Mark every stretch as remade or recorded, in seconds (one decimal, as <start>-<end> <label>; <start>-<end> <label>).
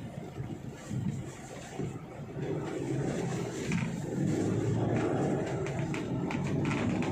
0.0-0.8 recorded; 0.8-2.8 remade; 2.8-7.1 recorded